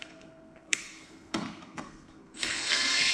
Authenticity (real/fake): fake